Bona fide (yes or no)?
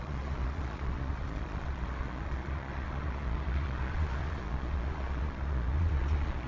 no